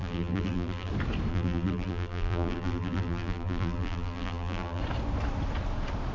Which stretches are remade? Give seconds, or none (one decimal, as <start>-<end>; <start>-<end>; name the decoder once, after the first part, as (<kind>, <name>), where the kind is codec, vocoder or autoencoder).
0.0-0.9 (vocoder, BigVGAN v2); 1.3-4.8